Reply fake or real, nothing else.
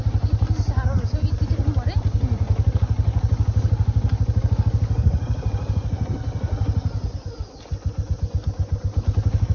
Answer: real